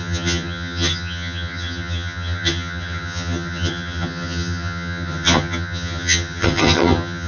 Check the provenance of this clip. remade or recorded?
remade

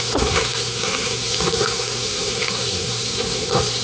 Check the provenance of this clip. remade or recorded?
remade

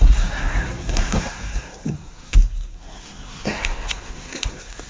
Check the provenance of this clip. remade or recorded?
remade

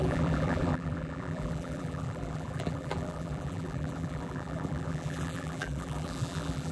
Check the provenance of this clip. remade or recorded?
remade